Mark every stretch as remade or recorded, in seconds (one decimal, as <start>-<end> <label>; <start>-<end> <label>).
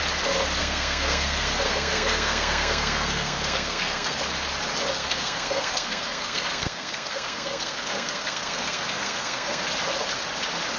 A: 0.0-0.6 recorded; 0.6-4.2 remade; 4.2-5.0 recorded; 5.0-9.6 remade; 9.6-10.8 recorded